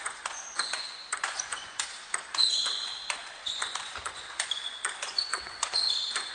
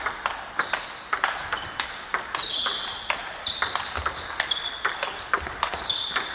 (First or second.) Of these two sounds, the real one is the second